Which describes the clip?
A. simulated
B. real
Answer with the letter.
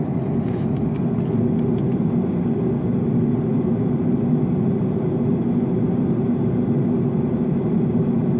B